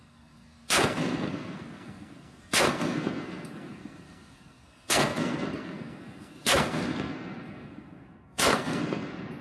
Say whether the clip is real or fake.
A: fake